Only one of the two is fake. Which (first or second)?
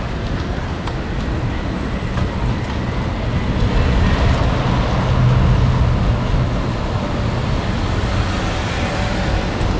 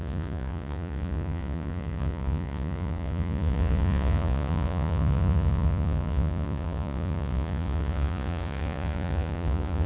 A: second